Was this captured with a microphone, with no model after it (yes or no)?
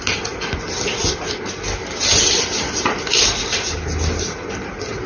yes